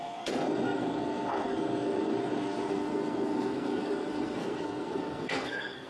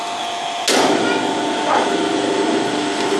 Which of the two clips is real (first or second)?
second